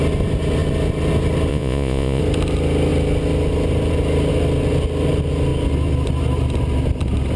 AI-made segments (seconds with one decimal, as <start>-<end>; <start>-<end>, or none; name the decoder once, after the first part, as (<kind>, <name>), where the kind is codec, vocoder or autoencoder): 1.5-2.2 (vocoder, Vocos)